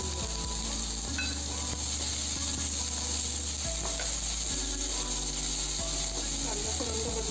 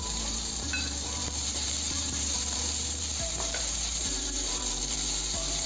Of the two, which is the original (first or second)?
first